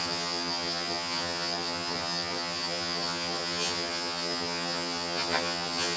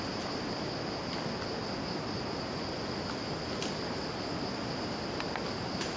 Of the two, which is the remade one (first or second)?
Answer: first